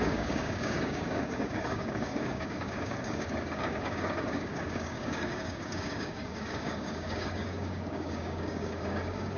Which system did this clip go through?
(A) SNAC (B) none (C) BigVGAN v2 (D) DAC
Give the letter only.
D